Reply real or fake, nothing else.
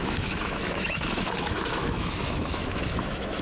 fake